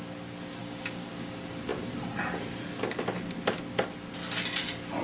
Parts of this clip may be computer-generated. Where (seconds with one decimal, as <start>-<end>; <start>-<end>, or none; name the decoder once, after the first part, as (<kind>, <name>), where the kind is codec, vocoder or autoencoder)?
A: 0.6-1.1 (codec, DAC)